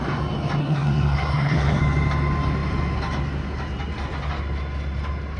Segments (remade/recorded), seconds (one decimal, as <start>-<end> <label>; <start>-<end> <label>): 0.0-0.6 recorded; 0.6-1.8 remade; 1.8-5.4 recorded